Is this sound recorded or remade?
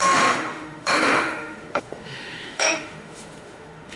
remade